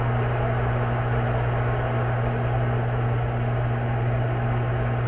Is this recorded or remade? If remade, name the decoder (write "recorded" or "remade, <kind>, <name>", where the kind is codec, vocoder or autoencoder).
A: remade, vocoder, BigVGAN v2